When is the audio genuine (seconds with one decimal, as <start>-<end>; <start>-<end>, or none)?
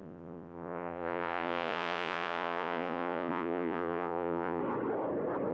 4.6-5.5